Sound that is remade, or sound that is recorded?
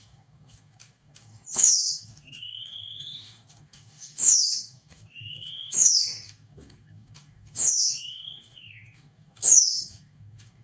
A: remade